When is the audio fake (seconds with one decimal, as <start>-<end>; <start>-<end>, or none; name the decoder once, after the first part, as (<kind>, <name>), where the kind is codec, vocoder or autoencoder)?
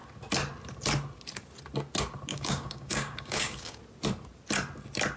2.3-3.8 (codec, DAC)